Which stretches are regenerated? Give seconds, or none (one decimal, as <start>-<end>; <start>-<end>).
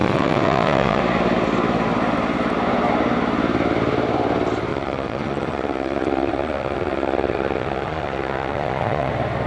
0.0-1.0; 4.7-9.1